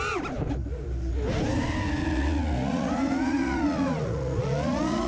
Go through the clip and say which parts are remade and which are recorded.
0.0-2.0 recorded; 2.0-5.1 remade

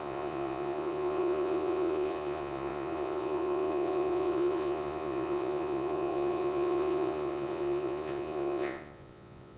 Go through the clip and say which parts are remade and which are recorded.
0.0-9.6 remade

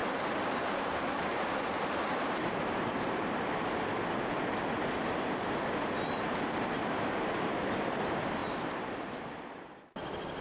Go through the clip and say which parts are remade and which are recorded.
0.0-3.9 remade; 3.9-4.9 recorded; 4.9-10.4 remade

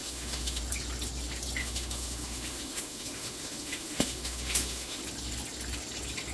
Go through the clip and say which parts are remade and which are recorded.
0.0-0.6 remade; 0.6-1.6 recorded; 1.6-5.0 remade; 5.0-6.3 recorded

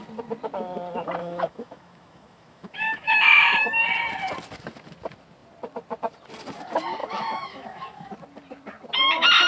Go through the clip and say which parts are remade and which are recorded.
0.0-1.2 recorded; 1.2-3.8 remade; 3.8-7.0 recorded; 7.0-8.1 remade; 8.1-9.5 recorded

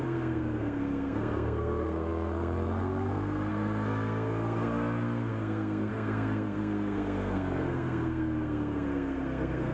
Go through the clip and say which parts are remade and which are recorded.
0.0-9.7 remade

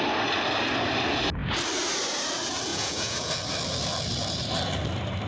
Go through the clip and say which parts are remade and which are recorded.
0.0-2.7 recorded; 2.7-3.3 remade; 3.3-5.3 recorded

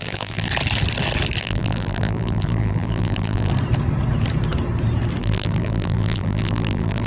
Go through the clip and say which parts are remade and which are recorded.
0.0-0.5 remade; 0.5-1.4 recorded; 1.4-3.5 remade; 3.5-5.2 recorded; 5.2-7.1 remade